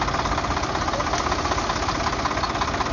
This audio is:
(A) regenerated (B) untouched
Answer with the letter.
B